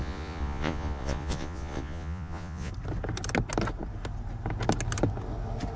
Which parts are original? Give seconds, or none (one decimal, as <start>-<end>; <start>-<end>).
2.7-5.8